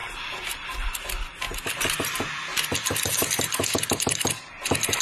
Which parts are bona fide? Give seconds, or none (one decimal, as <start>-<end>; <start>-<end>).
0.0-5.0